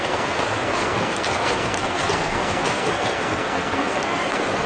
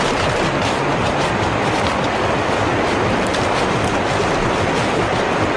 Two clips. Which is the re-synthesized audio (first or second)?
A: first